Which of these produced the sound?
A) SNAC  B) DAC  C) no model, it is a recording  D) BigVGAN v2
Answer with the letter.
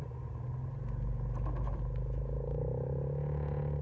C